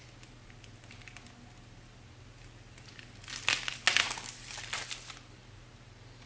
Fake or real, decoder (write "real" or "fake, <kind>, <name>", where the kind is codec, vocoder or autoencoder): real